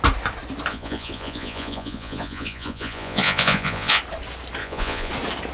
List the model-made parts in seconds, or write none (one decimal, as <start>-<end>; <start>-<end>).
0.7-4.0; 4.6-5.1